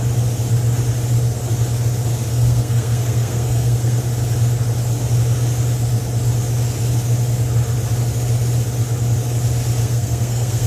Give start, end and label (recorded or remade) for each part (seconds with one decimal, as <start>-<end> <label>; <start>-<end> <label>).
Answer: 0.0-2.3 recorded; 2.3-4.0 remade; 4.0-9.8 recorded; 9.8-10.7 remade

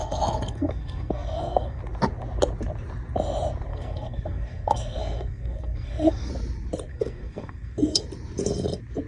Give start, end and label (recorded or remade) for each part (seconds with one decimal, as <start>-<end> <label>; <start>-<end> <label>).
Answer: 0.0-1.8 remade; 1.8-3.7 recorded; 3.7-6.3 remade; 6.3-6.9 recorded; 6.9-8.0 remade; 8.0-9.1 recorded

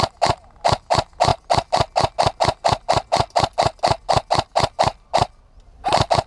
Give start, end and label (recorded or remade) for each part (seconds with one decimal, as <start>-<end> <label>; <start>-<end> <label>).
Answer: 0.0-6.3 recorded

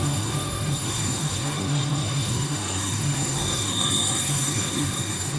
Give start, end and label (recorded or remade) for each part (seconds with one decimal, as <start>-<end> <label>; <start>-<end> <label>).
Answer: 0.0-5.4 remade

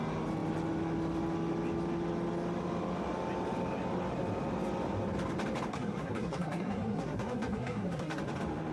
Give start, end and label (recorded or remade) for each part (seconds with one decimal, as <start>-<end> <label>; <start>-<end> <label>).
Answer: 0.0-5.7 recorded; 5.7-8.2 remade; 8.2-8.7 recorded

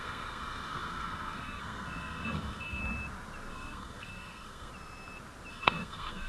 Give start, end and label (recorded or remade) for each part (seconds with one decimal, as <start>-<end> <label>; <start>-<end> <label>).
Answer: 0.0-2.8 remade; 2.8-3.5 recorded; 3.5-4.7 remade; 4.7-5.5 recorded; 5.5-6.3 remade

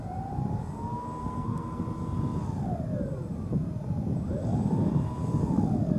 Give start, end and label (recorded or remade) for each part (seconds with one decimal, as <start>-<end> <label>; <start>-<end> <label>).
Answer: 0.0-1.2 recorded; 1.2-1.8 remade; 1.8-6.0 recorded